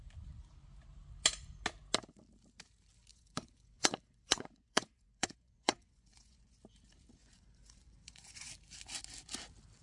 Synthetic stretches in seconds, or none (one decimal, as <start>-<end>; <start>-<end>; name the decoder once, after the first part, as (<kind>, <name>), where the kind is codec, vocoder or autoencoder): 3.1-6.5 (vocoder, Vocos); 7.2-8.5